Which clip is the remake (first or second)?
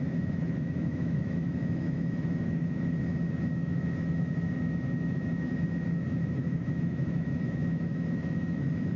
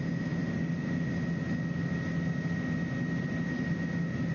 first